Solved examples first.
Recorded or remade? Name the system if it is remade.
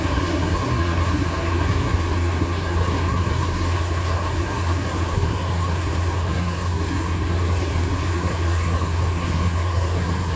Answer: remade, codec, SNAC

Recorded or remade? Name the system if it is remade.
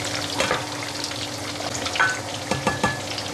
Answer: recorded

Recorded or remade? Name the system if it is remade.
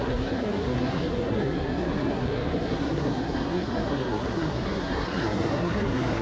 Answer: remade, codec, SNAC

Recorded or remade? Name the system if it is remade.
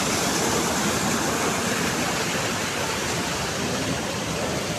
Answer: recorded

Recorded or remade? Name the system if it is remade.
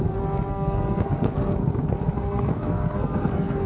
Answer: remade, codec, SNAC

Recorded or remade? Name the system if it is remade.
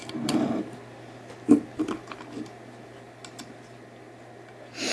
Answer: recorded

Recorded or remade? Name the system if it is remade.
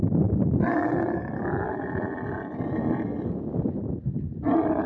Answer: recorded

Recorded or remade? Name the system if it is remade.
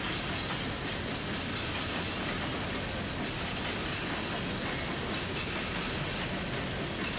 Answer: recorded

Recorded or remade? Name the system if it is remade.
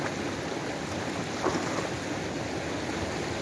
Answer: recorded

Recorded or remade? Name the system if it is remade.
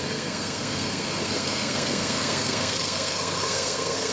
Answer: remade, codec, SNAC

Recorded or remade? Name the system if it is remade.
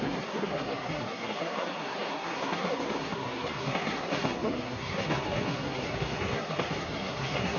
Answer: remade, codec, SNAC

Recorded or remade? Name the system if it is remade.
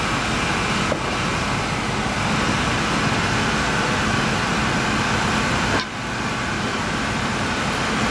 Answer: recorded